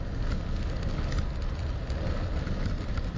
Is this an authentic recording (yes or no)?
yes